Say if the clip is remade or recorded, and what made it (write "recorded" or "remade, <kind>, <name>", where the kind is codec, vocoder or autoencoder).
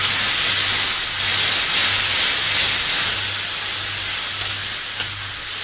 recorded